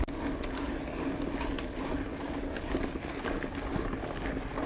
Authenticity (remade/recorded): recorded